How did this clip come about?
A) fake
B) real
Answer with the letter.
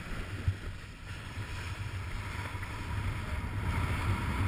B